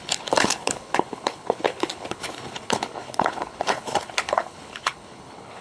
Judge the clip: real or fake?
fake